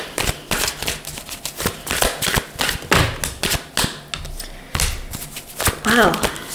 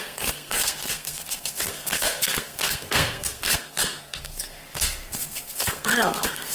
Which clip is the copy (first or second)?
second